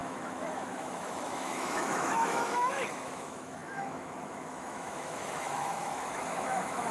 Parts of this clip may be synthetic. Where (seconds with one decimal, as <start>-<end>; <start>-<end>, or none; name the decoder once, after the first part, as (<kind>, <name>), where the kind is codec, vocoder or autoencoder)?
0.0-6.9 (autoencoder, DAC-VAE)